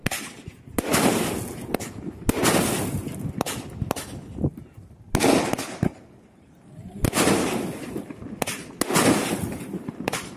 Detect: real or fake real